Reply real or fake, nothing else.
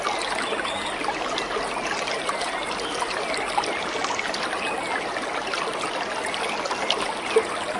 real